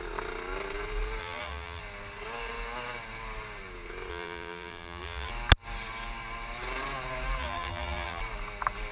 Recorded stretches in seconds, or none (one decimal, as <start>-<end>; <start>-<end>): 0.0-1.2; 1.8-4.1; 5.3-7.4; 8.2-8.9